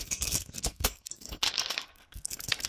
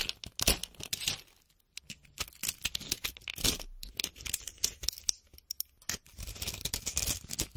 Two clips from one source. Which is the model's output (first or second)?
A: first